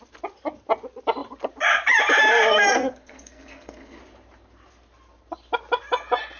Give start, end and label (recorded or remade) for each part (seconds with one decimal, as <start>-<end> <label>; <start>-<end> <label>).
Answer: 0.0-2.7 recorded; 2.7-4.0 remade; 4.0-6.4 recorded